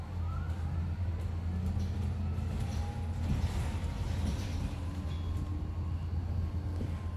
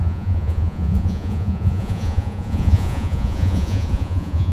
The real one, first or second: first